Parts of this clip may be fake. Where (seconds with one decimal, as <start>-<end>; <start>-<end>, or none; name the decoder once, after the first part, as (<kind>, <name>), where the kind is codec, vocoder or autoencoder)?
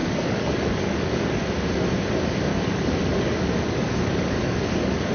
0.0-1.4 (codec, DAC); 2.5-5.1